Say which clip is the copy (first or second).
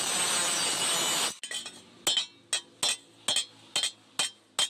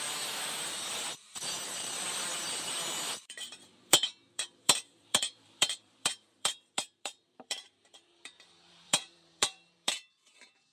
second